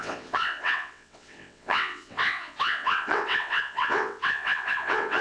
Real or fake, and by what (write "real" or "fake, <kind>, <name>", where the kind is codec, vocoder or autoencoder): fake, vocoder, WaveNeXt